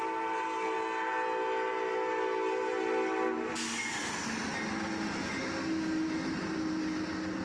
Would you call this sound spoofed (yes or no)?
no